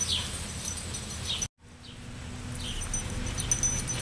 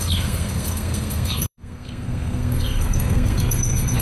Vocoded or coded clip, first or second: second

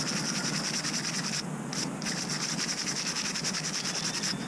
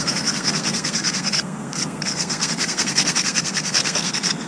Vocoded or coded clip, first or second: second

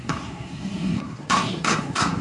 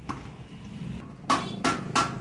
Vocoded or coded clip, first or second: first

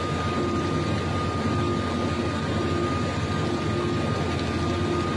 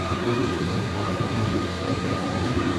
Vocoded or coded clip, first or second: second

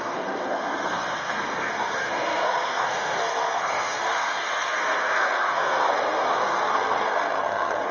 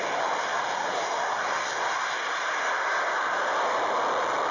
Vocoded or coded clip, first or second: first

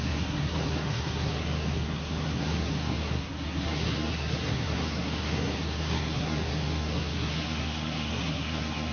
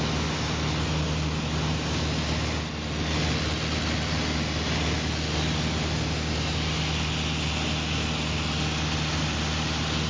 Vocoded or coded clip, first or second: first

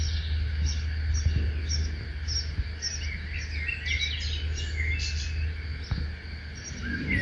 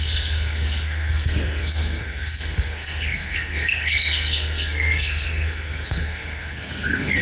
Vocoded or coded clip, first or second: second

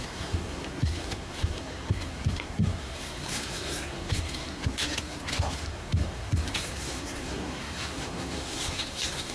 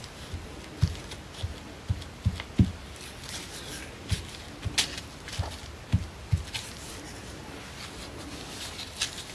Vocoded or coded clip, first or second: first